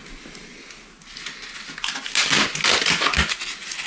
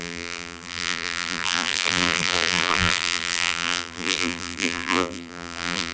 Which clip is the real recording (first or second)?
first